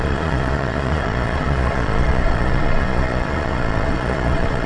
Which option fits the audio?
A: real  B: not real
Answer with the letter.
B